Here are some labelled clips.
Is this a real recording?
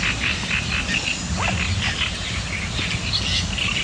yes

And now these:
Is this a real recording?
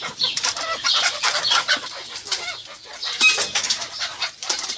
no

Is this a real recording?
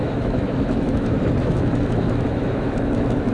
no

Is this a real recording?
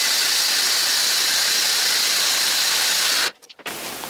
yes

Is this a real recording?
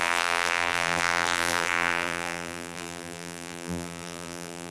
no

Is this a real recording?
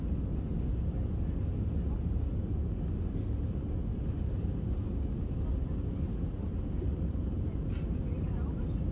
yes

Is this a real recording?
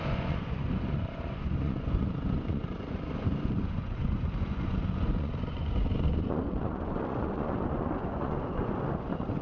no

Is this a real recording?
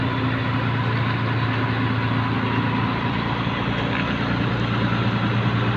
yes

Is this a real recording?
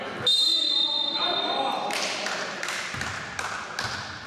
yes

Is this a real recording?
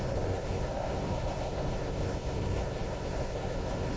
no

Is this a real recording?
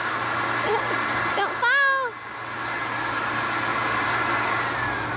yes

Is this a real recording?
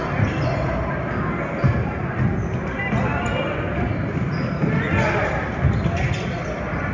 yes